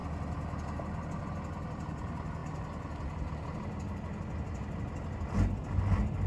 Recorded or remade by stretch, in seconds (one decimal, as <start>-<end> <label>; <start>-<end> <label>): 0.0-6.3 recorded